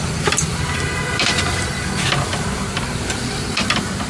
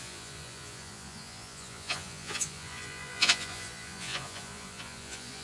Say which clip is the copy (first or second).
second